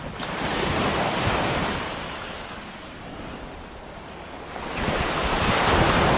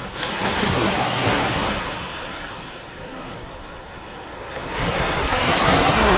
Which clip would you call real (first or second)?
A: first